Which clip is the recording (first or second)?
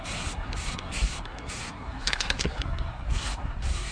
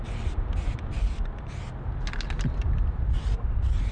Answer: second